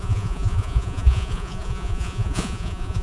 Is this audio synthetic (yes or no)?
yes